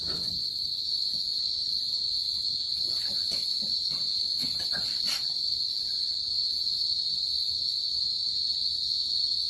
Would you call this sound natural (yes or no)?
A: yes